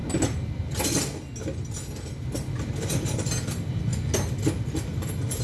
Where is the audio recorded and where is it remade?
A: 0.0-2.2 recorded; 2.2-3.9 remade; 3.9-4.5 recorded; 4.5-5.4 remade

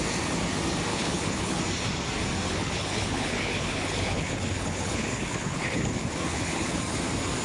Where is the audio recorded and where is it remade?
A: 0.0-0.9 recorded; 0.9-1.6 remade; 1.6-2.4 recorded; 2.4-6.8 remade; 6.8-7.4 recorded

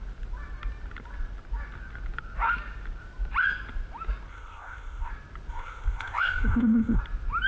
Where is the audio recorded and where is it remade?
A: 0.0-4.3 recorded; 4.3-5.1 remade; 5.1-5.5 recorded; 5.5-7.0 remade; 7.0-7.5 recorded

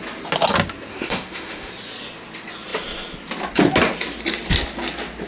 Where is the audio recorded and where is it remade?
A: 0.0-0.9 recorded; 0.9-1.7 remade; 1.7-5.3 recorded

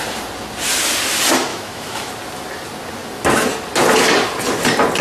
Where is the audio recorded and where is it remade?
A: 0.0-1.5 recorded; 1.5-2.1 remade; 2.1-5.0 recorded

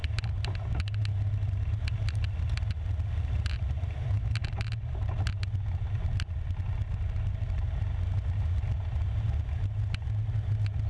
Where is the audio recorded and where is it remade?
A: 0.0-10.9 recorded

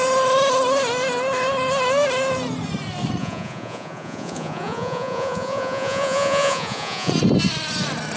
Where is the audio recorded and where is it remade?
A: 0.0-3.2 recorded; 3.2-7.1 remade; 7.1-8.2 recorded